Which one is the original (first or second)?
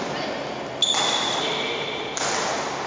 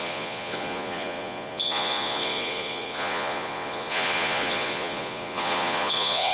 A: first